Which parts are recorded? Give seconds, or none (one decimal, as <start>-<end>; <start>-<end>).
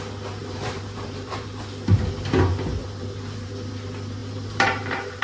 0.0-0.4; 1.6-2.8; 3.5-4.2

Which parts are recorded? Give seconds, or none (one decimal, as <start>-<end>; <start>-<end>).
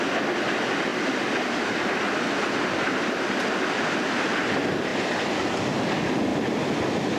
0.0-6.3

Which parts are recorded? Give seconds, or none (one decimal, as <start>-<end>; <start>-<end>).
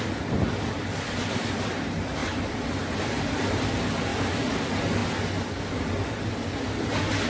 0.0-2.2; 3.6-4.1; 4.6-7.3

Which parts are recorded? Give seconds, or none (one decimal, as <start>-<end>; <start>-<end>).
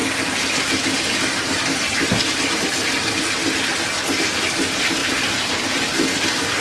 0.0-5.0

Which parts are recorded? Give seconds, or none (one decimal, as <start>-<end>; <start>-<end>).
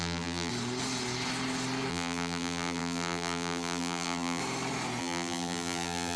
0.5-1.9; 4.4-5.0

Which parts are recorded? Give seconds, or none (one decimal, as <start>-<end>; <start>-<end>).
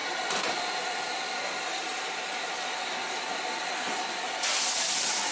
0.6-5.3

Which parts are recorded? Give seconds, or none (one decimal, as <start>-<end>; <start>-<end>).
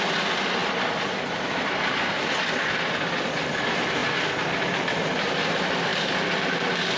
4.0-4.9; 5.9-7.0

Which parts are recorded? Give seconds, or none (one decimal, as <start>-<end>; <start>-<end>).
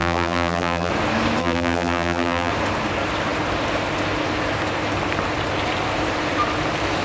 0.9-1.4; 2.5-7.0